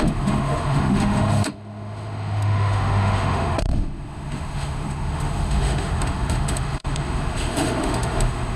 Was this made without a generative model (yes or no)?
no